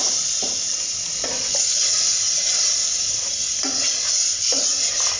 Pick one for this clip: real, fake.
real